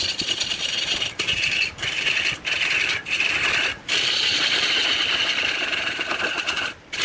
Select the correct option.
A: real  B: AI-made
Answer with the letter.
A